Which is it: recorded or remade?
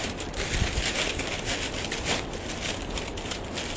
recorded